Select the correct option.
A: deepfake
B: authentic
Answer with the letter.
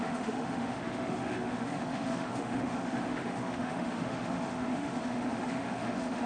A